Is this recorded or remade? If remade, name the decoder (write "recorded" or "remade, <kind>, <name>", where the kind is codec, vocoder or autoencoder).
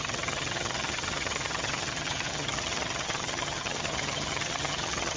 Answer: remade, vocoder, HiFi-GAN